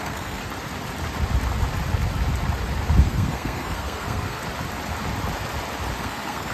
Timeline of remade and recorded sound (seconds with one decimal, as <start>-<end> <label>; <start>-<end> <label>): 0.0-0.4 remade; 0.4-3.0 recorded; 3.0-4.4 remade; 4.4-6.0 recorded; 6.0-6.5 remade